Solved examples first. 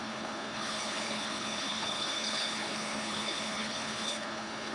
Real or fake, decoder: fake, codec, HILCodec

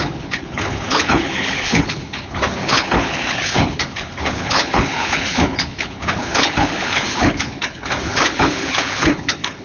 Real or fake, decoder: fake, codec, HILCodec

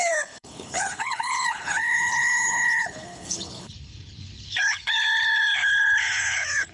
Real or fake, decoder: fake, codec, HILCodec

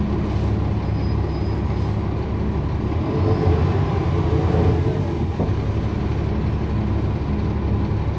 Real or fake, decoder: real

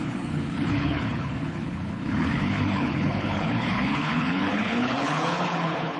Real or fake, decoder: fake, codec, HILCodec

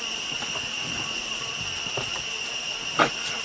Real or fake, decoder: real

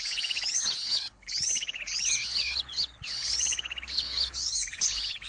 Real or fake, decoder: fake, codec, HILCodec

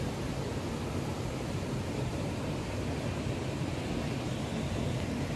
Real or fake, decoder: real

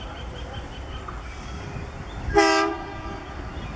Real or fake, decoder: real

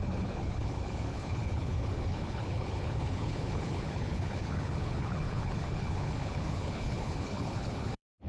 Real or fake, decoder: fake, codec, HILCodec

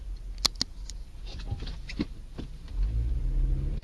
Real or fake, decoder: real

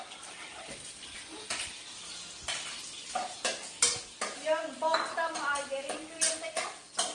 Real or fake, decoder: real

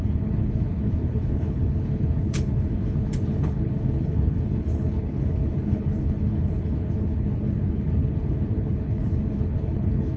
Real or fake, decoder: fake, codec, HILCodec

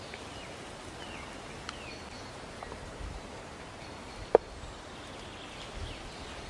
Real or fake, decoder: real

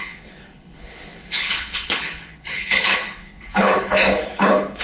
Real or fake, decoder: fake, codec, HILCodec